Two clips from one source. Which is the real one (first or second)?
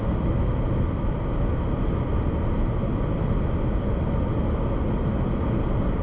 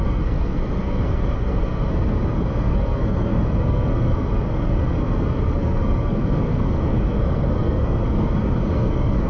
first